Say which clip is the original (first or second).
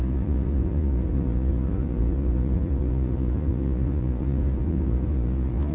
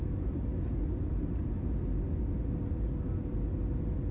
second